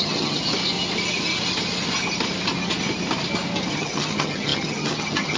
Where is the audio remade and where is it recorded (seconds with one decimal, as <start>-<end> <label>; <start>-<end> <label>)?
0.0-0.5 remade; 0.5-3.7 recorded; 3.7-5.4 remade